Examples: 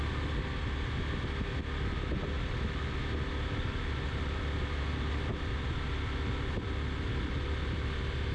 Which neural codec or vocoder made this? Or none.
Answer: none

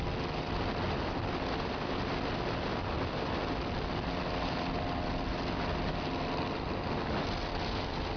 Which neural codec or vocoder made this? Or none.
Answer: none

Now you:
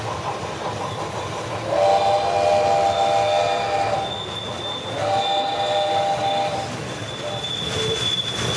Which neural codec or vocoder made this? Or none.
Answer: none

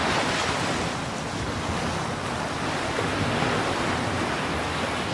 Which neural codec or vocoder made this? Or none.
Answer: none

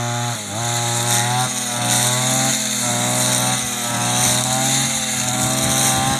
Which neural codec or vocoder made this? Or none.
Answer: none